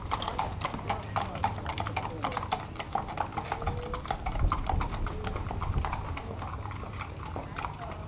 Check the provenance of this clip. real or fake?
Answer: real